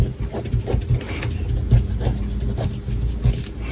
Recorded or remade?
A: recorded